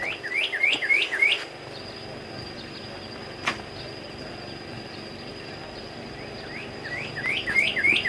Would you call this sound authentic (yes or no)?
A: yes